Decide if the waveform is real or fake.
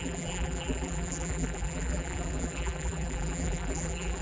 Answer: fake